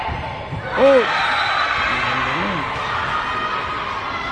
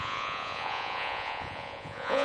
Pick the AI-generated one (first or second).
second